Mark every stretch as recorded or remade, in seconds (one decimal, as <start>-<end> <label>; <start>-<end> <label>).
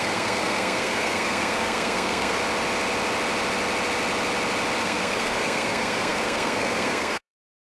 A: 0.0-2.4 remade; 2.4-4.8 recorded; 4.8-7.7 remade